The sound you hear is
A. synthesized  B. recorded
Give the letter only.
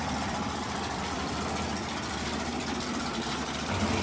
A